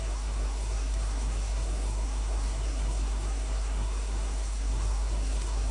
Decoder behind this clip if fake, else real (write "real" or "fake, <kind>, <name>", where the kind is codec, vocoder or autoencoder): fake, codec, SNAC